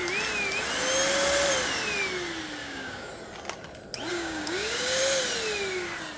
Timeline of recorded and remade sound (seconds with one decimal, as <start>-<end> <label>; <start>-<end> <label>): 0.0-2.6 recorded; 2.6-3.1 remade; 3.1-4.1 recorded; 4.1-5.0 remade; 5.0-6.2 recorded